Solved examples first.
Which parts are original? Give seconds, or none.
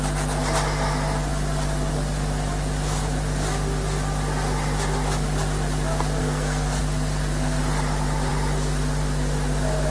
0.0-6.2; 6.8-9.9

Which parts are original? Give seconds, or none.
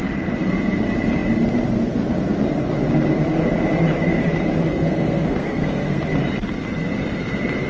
0.0-4.7; 6.0-7.7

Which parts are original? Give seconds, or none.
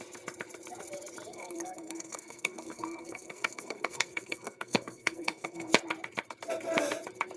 0.0-1.3; 5.7-7.4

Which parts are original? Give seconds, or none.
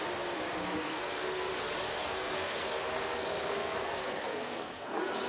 0.0-0.8; 1.5-2.0